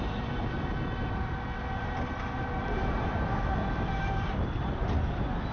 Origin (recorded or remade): recorded